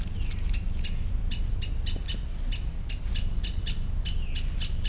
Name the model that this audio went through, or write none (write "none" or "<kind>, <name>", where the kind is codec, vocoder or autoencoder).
none